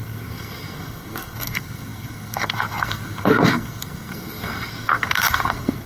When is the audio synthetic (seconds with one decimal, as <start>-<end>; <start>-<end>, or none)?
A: 0.0-5.9